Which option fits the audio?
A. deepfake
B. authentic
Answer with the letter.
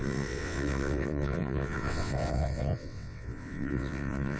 A